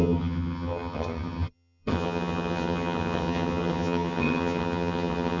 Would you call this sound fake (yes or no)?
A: yes